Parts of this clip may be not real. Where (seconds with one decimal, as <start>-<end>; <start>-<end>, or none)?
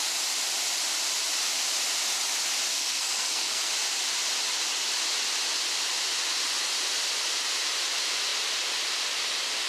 2.7-3.7